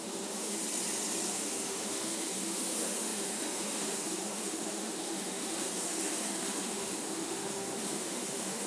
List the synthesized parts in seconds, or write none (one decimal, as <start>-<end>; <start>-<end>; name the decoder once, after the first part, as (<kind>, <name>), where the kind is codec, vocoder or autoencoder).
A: 0.0-0.6 (autoencoder, DAC-VAE); 1.3-8.7